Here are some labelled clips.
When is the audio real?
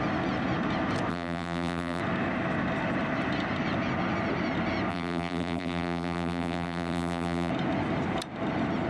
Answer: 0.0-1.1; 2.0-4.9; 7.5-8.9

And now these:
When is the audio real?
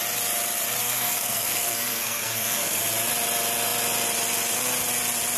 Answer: 0.0-0.8; 2.8-5.4